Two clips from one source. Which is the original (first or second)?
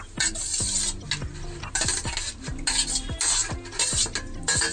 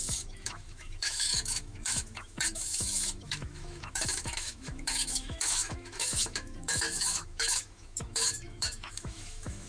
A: first